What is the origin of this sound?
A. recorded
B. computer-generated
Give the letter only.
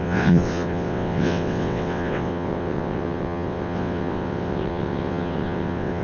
B